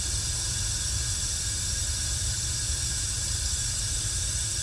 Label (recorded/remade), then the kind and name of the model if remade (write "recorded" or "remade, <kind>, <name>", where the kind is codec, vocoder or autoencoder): recorded